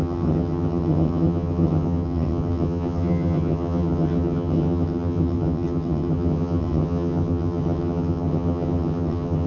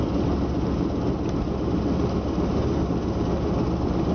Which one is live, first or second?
second